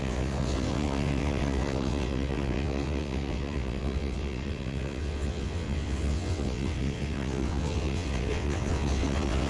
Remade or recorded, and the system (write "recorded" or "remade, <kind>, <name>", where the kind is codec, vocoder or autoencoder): remade, vocoder, WaveNeXt